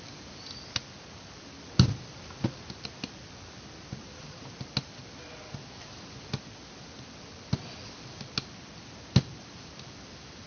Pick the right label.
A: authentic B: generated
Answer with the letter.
A